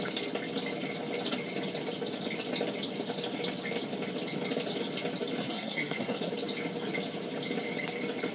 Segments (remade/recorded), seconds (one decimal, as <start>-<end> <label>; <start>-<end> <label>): 0.0-5.4 recorded; 5.4-6.3 remade; 6.3-8.3 recorded